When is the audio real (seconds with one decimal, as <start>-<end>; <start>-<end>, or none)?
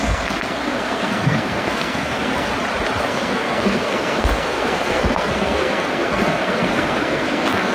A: 2.5-3.0